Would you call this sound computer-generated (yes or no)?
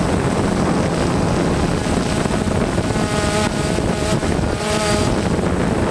no